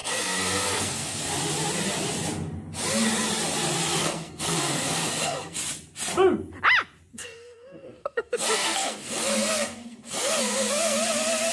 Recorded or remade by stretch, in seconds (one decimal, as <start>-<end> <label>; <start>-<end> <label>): 0.0-1.3 remade; 1.3-4.0 recorded; 4.0-5.6 remade; 5.6-7.1 recorded; 7.1-11.0 remade; 11.0-11.5 recorded